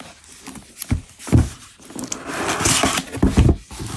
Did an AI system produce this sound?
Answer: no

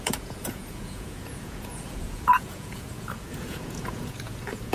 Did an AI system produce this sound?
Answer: yes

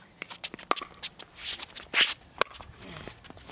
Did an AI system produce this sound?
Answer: no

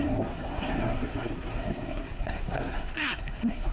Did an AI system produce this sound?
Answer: yes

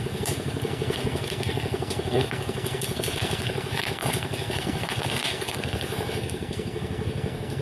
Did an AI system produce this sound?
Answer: yes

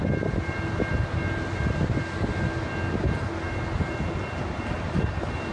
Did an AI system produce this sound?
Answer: no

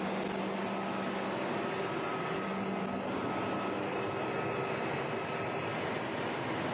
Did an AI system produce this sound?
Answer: no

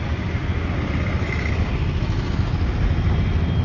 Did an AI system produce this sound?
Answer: no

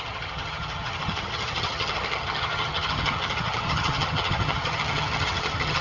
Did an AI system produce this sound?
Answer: yes